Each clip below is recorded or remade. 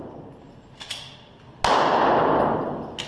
recorded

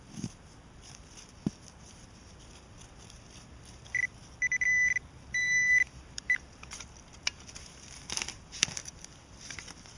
remade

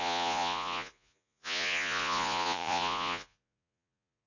remade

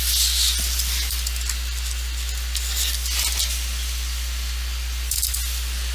recorded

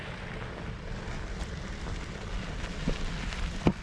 recorded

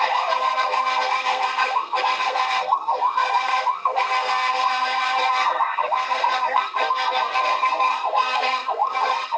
remade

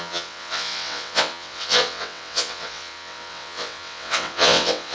remade